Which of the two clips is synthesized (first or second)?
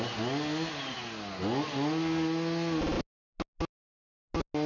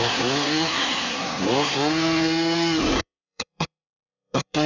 second